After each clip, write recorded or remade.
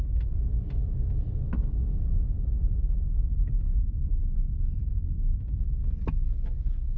recorded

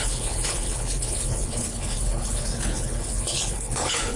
remade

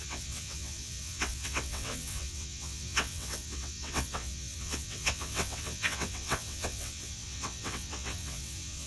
remade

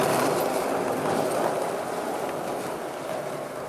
recorded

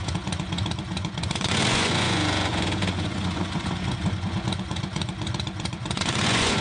remade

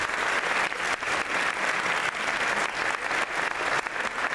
recorded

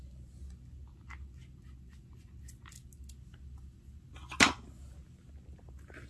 recorded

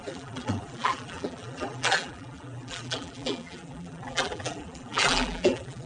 remade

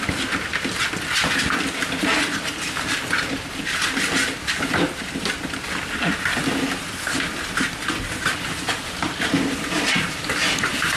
recorded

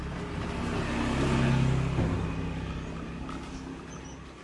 recorded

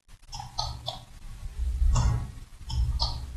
recorded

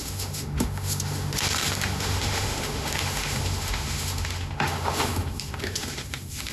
remade